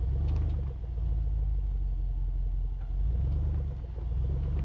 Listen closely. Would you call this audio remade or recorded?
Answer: recorded